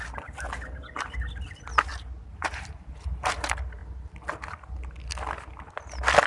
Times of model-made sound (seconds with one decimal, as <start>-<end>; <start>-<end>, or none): none